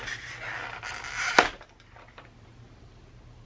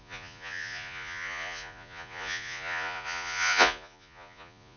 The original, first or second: first